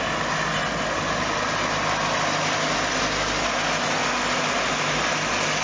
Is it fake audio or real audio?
real